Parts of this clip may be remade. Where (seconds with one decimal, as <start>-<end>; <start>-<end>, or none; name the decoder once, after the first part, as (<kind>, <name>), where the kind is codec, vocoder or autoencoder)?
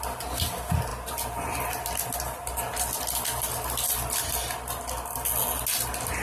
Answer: none